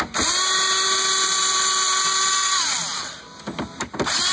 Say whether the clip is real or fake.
real